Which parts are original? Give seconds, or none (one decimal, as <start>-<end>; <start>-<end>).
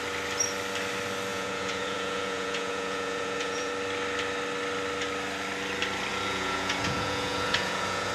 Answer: 0.0-1.3; 3.7-6.1